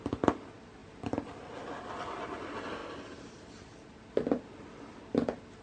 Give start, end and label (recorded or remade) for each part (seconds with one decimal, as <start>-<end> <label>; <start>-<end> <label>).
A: 0.0-5.6 recorded